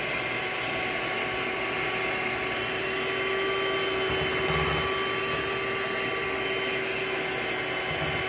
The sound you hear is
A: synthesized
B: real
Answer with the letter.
B